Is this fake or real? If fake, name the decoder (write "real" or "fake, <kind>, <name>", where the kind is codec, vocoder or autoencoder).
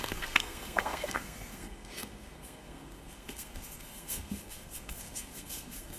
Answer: fake, codec, SNAC